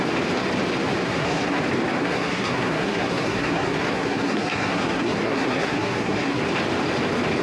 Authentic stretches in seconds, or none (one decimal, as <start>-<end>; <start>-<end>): 0.0-1.0; 1.6-2.0; 6.4-7.4